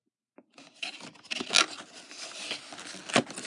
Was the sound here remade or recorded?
recorded